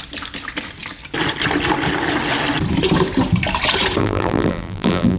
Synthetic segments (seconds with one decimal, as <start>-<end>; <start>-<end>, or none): 4.0-5.2